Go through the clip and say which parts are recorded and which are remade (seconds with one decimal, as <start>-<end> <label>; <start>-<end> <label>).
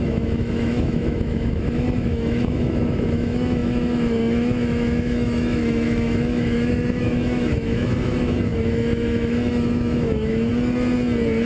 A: 0.0-10.5 remade; 10.5-11.5 recorded